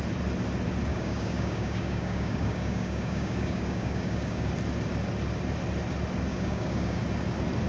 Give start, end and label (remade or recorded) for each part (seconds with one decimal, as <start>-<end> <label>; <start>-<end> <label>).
0.0-0.9 recorded; 0.9-4.5 remade; 4.5-6.3 recorded; 6.3-7.0 remade; 7.0-7.7 recorded